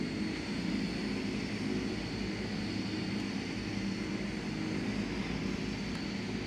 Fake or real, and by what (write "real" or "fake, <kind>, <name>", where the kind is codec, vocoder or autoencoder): real